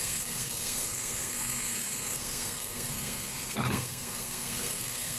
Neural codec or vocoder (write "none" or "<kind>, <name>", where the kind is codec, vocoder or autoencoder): codec, SNAC